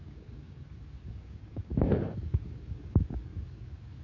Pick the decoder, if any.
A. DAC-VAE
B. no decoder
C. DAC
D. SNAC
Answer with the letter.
C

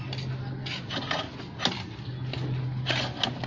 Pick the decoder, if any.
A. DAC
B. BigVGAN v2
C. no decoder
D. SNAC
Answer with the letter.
C